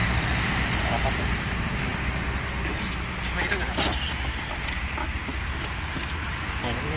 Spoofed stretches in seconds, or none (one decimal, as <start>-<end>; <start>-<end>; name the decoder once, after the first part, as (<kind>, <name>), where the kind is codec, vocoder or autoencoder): 0.0-1.9 (vocoder, BigVGAN v2); 4.4-7.0